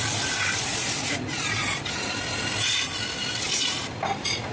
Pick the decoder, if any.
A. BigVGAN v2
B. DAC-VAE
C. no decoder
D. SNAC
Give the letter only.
A